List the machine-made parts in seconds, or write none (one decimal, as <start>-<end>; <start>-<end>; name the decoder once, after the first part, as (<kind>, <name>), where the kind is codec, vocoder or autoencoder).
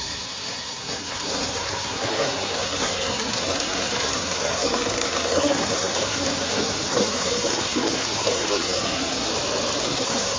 0.0-9.3 (codec, SNAC); 9.8-10.4